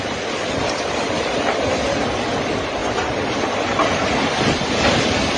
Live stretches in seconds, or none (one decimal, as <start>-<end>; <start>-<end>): 0.0-5.4